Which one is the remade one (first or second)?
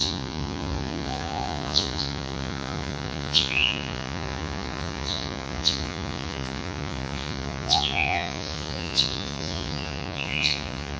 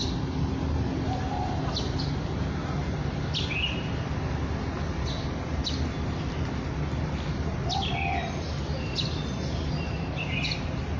first